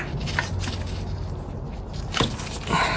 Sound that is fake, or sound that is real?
real